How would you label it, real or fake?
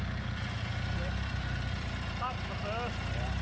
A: real